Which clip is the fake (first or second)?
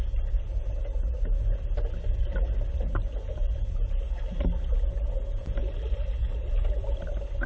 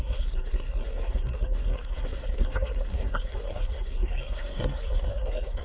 second